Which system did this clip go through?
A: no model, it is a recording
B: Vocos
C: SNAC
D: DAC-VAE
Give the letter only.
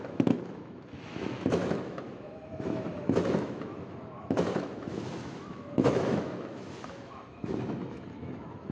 D